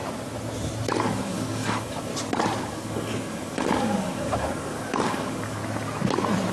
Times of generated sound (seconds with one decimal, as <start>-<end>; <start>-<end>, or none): 1.0-2.1; 2.6-5.6